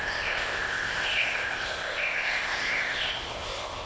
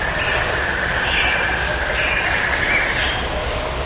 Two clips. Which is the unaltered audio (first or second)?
second